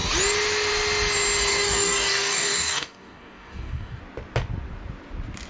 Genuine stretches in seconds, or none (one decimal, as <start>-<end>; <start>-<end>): 0.0-1.5; 4.0-5.5